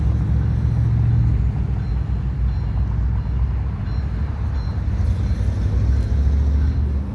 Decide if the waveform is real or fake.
real